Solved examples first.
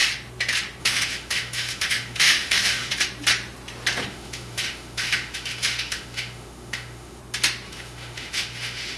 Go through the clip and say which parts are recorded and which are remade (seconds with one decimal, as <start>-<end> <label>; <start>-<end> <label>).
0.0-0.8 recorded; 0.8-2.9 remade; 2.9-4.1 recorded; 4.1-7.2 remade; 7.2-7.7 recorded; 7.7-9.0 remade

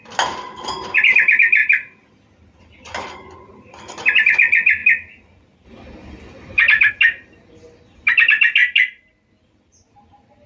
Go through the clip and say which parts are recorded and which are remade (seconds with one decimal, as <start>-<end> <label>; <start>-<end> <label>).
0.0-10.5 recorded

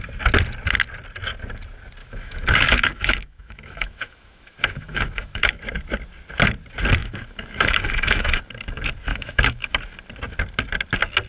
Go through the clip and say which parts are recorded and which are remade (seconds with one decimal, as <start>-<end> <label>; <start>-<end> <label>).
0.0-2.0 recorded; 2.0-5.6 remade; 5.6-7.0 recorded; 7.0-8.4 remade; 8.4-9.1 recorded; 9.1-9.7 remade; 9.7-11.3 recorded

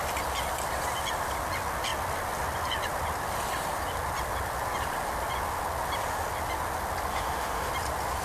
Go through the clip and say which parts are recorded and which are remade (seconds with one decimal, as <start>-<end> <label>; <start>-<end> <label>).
0.0-7.1 recorded; 7.1-7.7 remade; 7.7-8.2 recorded

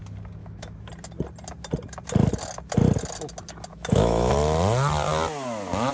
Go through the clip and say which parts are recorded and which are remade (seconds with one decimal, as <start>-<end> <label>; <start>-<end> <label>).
0.0-0.4 recorded; 0.4-0.9 remade; 0.9-3.7 recorded; 3.7-4.3 remade; 4.3-5.9 recorded

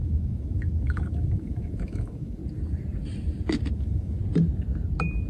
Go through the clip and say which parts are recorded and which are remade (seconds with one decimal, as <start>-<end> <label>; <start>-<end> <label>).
0.0-2.4 remade; 2.4-3.7 recorded; 3.7-4.2 remade; 4.2-5.3 recorded